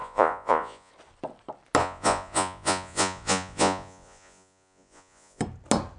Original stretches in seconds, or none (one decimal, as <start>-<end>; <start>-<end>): 0.9-1.8; 5.4-6.0